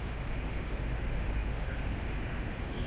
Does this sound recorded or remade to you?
remade